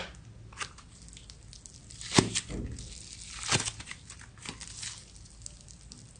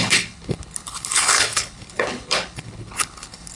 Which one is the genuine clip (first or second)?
first